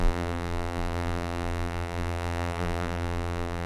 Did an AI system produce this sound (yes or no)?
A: yes